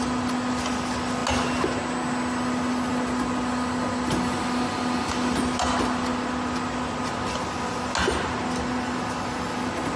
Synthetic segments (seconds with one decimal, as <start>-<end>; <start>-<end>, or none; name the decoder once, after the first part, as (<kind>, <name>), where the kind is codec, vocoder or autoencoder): none